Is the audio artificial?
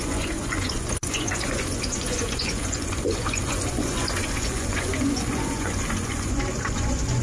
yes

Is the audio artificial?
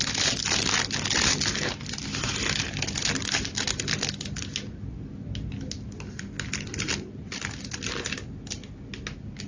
no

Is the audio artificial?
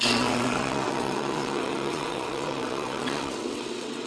yes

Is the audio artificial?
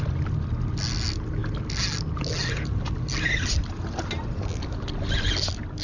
no